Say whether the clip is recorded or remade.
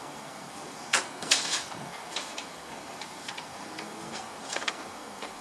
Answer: remade